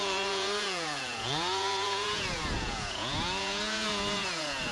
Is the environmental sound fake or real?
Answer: fake